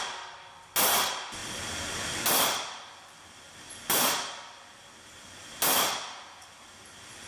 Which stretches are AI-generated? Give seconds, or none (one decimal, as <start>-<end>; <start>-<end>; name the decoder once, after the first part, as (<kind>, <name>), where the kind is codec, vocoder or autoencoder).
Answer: none